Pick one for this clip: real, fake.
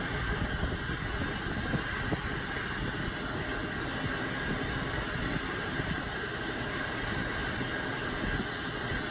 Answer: real